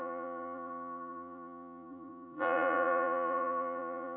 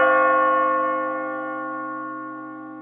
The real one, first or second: second